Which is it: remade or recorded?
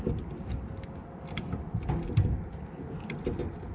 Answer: recorded